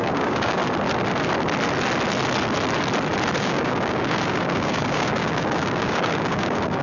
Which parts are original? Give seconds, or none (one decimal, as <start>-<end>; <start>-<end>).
0.6-3.4